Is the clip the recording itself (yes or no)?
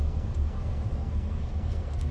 no